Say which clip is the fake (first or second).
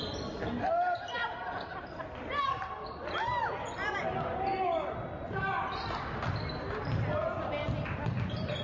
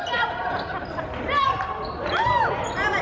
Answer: second